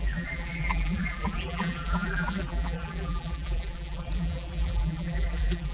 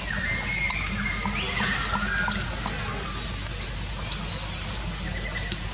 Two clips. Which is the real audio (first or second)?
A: second